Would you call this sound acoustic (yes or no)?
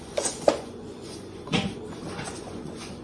no